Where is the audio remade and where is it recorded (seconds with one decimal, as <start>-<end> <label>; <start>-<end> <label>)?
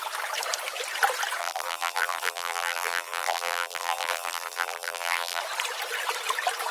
0.0-1.4 recorded; 1.4-5.4 remade; 5.4-6.7 recorded